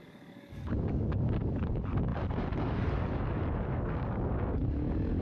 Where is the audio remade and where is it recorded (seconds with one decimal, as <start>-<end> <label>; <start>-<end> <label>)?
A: 0.0-5.2 remade

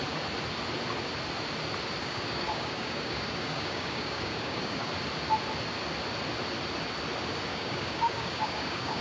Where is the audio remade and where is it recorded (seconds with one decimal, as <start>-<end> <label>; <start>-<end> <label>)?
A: 0.0-2.0 recorded; 2.0-4.9 remade; 4.9-7.5 recorded; 7.5-9.0 remade

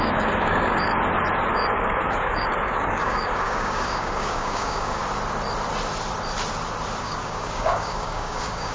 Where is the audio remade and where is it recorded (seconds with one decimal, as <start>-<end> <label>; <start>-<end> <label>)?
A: 0.0-0.9 remade; 0.9-1.5 recorded; 1.5-5.0 remade; 5.0-7.0 recorded; 7.0-8.7 remade

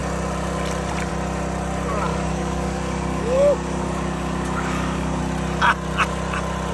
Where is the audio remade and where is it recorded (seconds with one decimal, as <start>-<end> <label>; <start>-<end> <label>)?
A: 0.0-2.1 recorded; 2.1-5.2 remade; 5.2-6.7 recorded